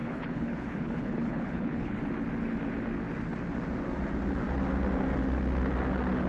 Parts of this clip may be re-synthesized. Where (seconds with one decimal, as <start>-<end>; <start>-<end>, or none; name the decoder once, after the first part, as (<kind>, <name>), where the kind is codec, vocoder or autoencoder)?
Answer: 0.0-2.0 (codec, HILCodec)